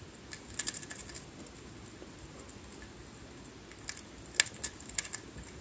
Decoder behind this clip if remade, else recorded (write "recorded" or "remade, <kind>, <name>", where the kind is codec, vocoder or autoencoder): recorded